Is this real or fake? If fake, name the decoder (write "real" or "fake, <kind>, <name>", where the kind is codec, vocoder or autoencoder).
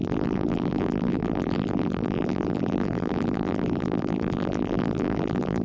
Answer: fake, vocoder, BigVGAN v2